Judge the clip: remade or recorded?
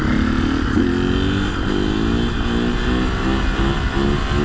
recorded